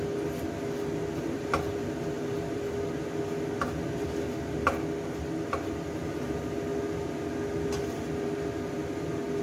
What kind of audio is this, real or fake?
real